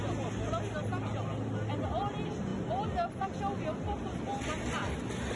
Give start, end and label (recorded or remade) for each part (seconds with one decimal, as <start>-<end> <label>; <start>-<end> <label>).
0.0-5.4 recorded